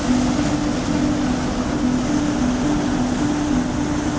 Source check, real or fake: real